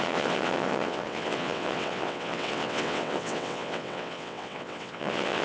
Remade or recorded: remade